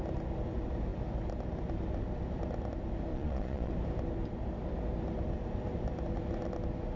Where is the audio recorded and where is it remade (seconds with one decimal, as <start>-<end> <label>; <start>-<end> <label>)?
0.0-3.1 recorded; 3.1-3.7 remade; 3.7-7.0 recorded